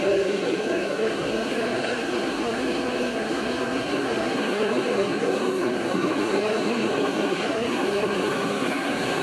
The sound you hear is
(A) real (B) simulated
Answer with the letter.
B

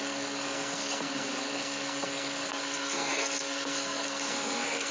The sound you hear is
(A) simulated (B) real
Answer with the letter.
A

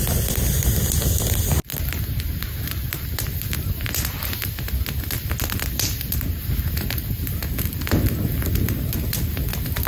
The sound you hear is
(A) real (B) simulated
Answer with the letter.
A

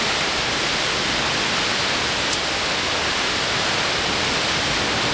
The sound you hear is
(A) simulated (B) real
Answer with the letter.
B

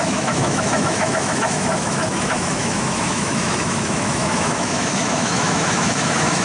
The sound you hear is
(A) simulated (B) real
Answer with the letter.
A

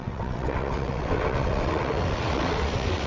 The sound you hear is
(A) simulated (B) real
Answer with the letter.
A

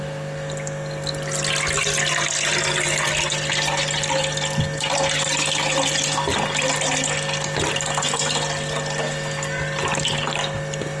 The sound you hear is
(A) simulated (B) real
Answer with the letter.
B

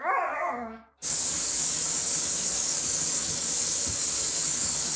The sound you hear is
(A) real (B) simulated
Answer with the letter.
B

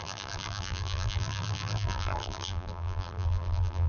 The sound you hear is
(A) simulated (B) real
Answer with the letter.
A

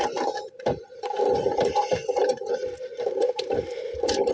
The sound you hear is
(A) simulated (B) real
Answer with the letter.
A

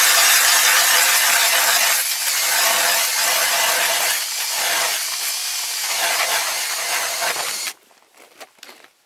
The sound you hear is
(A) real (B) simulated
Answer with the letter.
A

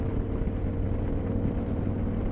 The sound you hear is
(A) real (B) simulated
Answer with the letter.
A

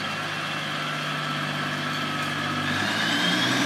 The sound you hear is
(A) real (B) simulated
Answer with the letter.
A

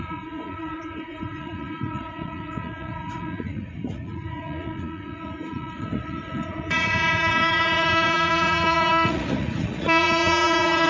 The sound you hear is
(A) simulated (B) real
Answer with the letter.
A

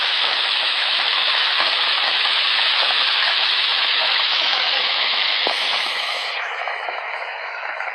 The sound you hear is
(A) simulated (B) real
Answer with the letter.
A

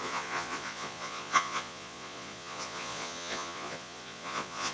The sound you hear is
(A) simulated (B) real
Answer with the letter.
A